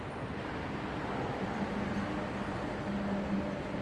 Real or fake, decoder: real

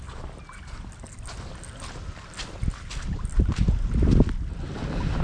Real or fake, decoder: real